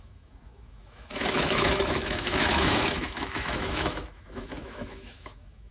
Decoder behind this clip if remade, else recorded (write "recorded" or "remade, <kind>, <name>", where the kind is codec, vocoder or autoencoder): remade, autoencoder, DAC-VAE